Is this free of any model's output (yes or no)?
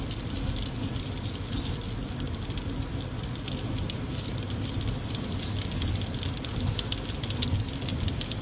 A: yes